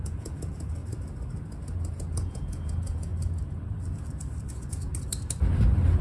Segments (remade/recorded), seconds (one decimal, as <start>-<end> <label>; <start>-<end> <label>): 0.0-0.8 remade; 0.8-1.9 recorded; 1.9-3.1 remade; 3.1-4.5 recorded; 4.5-4.9 remade; 4.9-6.0 recorded